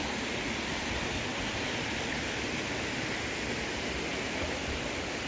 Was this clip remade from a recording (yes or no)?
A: no